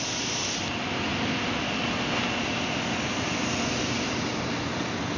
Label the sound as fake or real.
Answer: real